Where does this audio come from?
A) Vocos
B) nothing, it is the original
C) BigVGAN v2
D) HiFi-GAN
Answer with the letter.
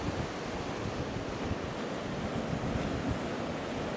B